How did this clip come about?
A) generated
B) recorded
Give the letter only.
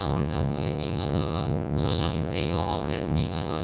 A